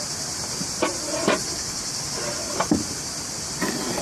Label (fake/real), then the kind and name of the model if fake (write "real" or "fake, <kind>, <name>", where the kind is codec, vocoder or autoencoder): fake, vocoder, BigVGAN v2